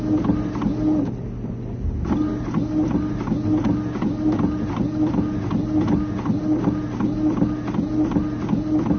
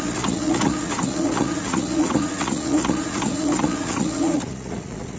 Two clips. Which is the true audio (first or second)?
first